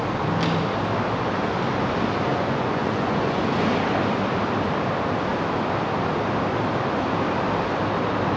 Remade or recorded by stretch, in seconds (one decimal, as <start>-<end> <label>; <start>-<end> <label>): 0.0-2.3 recorded; 2.3-3.4 remade; 3.4-8.4 recorded